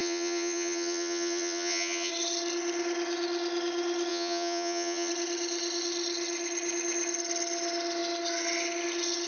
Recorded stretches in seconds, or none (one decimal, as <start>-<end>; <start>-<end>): 2.1-4.1; 5.1-9.3